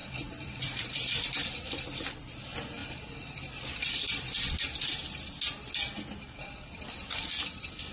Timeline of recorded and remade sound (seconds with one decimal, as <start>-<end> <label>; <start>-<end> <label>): 0.0-1.2 remade; 1.2-2.8 recorded; 2.8-4.4 remade; 4.4-7.9 recorded